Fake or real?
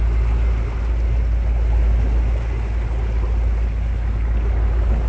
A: real